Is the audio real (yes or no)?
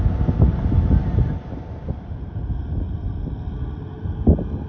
yes